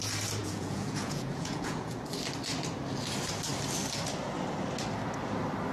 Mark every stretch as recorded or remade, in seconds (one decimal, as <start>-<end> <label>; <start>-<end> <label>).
0.0-0.4 recorded; 0.4-2.0 remade; 2.0-5.7 recorded